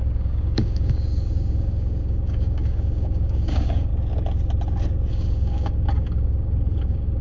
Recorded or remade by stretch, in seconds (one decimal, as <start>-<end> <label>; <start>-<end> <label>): 0.0-3.9 remade; 3.9-5.1 recorded; 5.1-7.2 remade